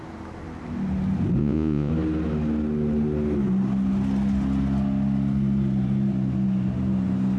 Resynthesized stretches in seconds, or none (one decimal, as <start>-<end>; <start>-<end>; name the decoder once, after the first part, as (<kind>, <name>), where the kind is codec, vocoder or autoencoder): 1.4-1.9 (vocoder, Vocos)